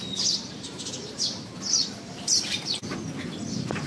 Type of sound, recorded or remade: remade